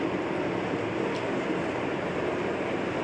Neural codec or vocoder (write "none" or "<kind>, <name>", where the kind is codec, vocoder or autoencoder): none